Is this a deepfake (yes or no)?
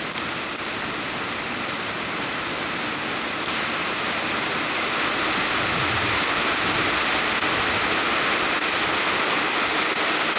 no